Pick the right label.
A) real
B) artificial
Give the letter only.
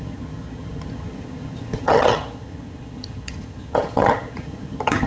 B